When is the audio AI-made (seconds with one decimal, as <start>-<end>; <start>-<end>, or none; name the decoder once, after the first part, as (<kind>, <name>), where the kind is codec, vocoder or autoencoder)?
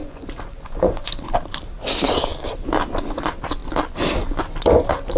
0.0-1.1 (vocoder, Vocos)